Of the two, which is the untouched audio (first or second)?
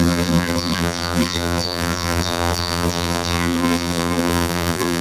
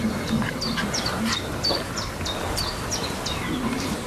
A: second